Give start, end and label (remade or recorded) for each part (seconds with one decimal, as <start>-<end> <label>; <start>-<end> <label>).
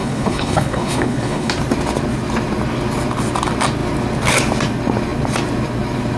0.0-1.5 remade; 1.5-6.2 recorded